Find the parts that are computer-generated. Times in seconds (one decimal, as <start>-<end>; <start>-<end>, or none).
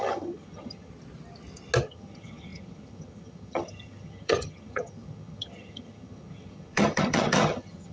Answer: 0.0-0.9; 1.8-7.9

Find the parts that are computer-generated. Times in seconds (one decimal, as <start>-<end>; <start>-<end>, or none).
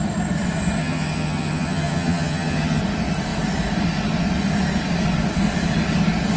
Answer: 0.8-2.8